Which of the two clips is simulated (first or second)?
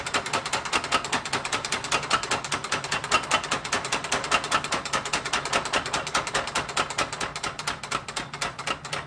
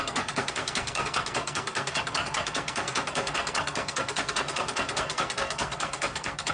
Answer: second